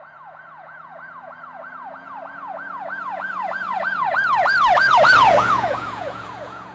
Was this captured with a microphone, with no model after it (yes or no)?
no